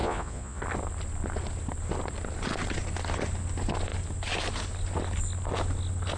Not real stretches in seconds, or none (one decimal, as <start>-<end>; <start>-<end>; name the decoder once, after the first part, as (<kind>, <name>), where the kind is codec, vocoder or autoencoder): 0.0-0.6 (vocoder, Vocos)

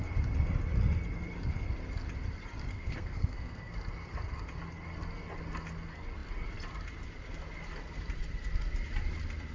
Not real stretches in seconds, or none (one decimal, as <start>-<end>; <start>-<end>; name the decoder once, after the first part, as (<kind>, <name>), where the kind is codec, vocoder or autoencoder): 2.7-3.7 (codec, SNAC)

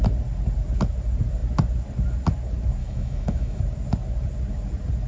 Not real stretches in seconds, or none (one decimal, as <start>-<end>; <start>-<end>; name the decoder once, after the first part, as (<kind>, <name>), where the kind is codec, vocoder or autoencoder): 2.8-3.6 (autoencoder, DAC-VAE)